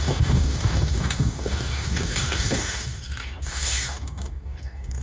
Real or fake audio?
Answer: fake